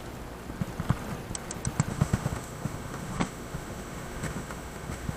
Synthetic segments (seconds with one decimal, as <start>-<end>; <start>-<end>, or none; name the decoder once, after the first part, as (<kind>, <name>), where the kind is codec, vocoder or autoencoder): 1.9-5.2 (autoencoder, DAC-VAE)